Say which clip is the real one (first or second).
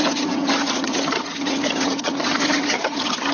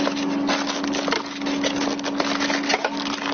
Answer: second